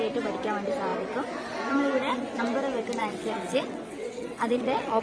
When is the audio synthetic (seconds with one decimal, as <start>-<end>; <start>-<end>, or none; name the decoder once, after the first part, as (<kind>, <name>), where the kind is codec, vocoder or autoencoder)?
3.0-5.0 (vocoder, WaveNeXt)